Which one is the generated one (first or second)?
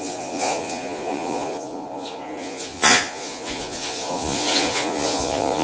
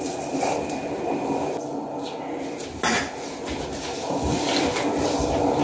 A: first